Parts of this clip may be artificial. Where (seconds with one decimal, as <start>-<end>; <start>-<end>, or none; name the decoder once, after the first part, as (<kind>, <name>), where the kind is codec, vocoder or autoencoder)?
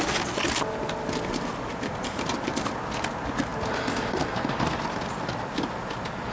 none